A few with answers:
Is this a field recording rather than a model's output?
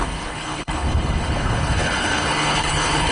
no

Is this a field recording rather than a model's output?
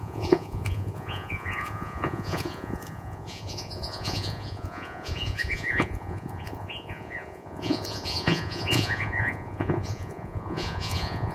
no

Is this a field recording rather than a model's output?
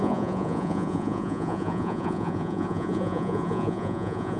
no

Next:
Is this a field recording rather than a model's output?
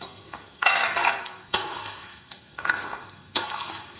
no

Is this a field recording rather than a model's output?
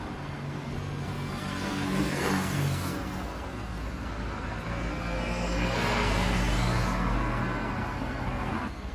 no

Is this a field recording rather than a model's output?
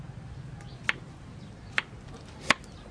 yes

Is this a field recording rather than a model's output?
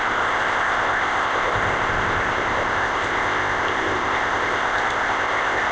no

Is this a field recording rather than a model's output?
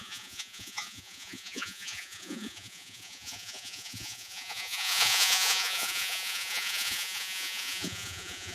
no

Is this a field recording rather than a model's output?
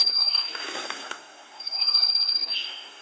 no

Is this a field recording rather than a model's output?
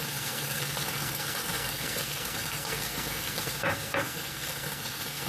no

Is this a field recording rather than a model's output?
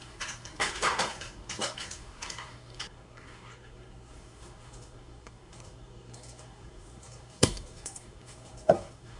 no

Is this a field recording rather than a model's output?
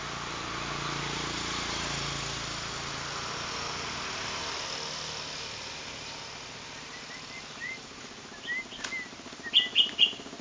yes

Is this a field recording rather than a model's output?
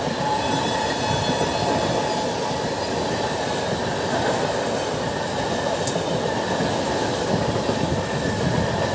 yes